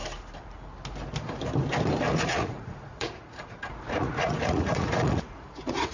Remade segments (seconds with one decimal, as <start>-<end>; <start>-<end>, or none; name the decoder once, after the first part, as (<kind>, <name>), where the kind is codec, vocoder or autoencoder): 2.1-5.9 (vocoder, Vocos)